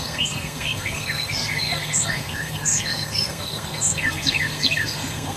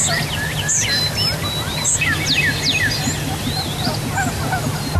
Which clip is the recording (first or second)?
second